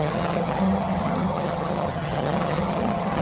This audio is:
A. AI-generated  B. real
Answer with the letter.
A